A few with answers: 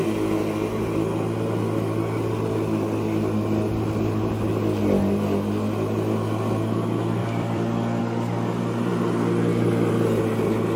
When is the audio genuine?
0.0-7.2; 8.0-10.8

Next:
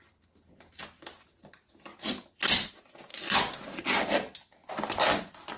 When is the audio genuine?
0.0-1.9; 2.7-3.1; 4.0-5.6

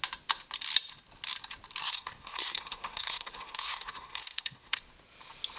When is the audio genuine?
0.0-1.8; 4.8-5.6

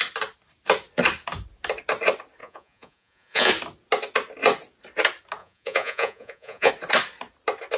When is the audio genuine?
0.0-2.4; 3.5-5.4; 6.7-7.8

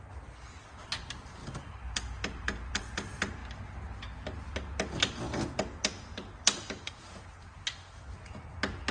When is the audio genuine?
0.0-1.4; 2.8-6.1; 6.8-8.9

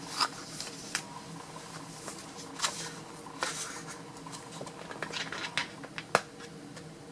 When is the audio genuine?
0.0-0.4; 1.0-7.1